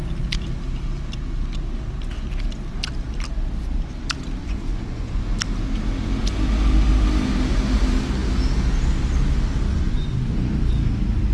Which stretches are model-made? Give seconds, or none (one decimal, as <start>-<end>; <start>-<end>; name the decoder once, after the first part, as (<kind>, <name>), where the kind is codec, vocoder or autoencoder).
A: 4.4-5.2 (vocoder, Vocos); 9.7-10.2